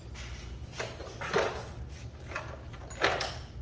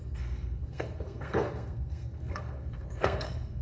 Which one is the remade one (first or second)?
second